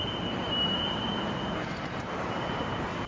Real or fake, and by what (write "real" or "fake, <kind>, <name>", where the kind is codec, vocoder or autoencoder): fake, vocoder, BigVGAN v2